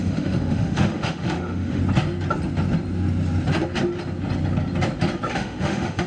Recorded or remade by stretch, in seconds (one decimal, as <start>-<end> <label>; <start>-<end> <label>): 0.0-1.8 remade; 1.8-5.3 recorded; 5.3-6.1 remade